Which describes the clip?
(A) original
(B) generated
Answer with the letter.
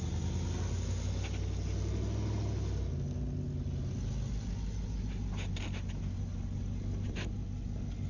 A